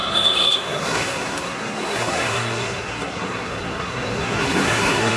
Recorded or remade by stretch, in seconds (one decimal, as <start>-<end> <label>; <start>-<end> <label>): 0.0-5.2 remade